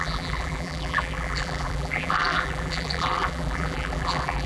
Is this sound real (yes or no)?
no